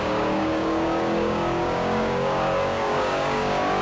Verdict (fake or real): fake